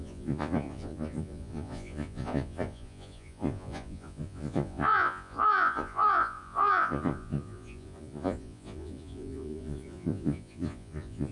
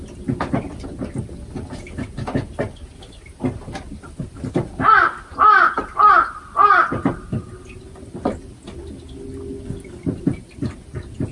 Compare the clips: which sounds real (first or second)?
second